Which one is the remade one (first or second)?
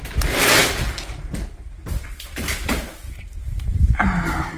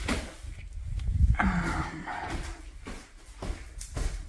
second